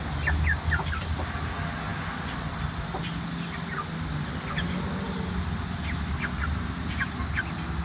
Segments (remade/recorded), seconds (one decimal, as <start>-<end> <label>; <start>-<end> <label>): 0.0-7.8 recorded